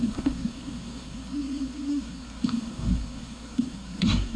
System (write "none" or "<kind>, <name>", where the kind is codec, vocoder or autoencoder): codec, SNAC